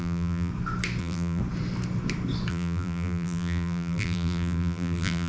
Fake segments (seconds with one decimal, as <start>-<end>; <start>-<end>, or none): 0.0-0.5; 1.0-1.4; 2.5-5.3